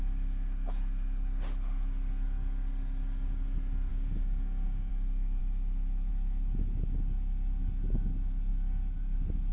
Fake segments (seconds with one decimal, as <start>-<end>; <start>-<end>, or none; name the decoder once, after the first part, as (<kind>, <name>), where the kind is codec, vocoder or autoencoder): 3.9-4.9 (codec, DAC)